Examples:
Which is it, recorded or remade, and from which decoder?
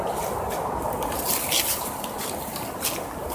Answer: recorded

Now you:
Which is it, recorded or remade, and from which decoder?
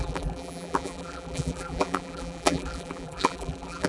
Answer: remade, vocoder, BigVGAN v2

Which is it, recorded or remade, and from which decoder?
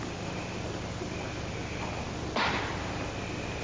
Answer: recorded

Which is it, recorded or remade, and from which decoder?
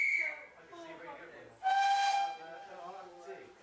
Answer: recorded